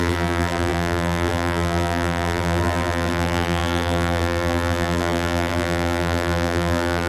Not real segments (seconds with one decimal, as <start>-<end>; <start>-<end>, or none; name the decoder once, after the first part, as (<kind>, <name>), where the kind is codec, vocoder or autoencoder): 0.0-7.1 (vocoder, BigVGAN v2)

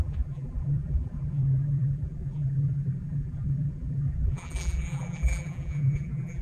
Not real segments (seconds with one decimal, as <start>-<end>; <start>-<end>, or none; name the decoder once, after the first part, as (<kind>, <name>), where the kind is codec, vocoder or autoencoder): 0.0-6.4 (vocoder, BigVGAN v2)